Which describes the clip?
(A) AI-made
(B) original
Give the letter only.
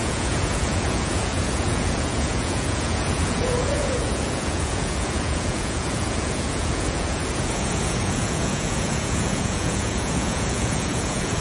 A